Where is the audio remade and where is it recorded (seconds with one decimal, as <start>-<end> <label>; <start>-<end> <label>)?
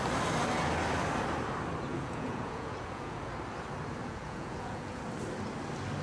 0.0-1.9 recorded; 1.9-3.3 remade; 3.3-4.0 recorded; 4.0-5.0 remade; 5.0-6.0 recorded